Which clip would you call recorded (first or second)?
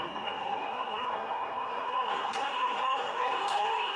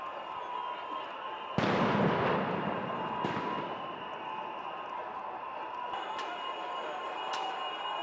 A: second